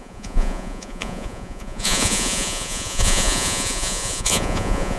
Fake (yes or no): yes